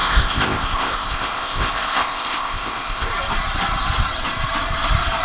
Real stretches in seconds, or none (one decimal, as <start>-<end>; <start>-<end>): 3.1-5.2